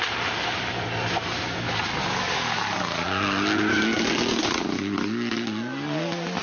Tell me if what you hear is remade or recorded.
recorded